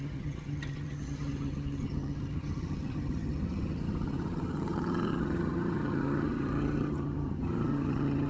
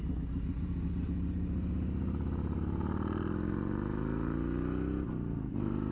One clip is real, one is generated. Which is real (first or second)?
second